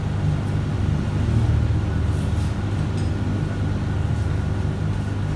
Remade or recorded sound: recorded